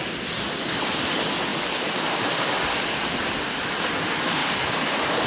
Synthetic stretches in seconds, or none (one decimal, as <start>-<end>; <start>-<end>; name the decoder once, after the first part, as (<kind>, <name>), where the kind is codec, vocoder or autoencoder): 4.4-5.3 (codec, DAC)